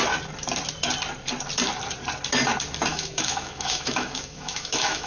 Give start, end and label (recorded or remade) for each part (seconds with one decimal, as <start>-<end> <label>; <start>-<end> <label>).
0.0-2.9 recorded; 2.9-5.1 remade